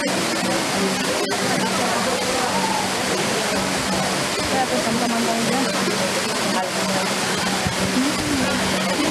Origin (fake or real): real